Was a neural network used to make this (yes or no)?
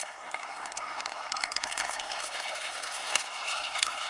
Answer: yes